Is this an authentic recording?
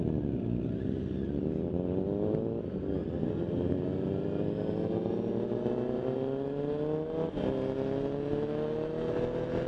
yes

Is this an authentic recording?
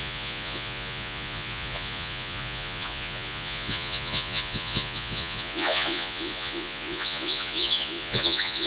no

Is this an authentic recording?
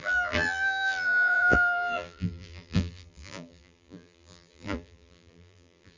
no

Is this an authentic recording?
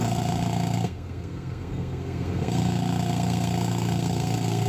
no